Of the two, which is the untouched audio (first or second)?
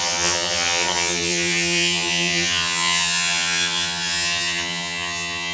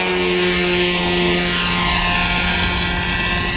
second